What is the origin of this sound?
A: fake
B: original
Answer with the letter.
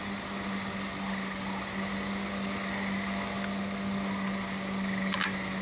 B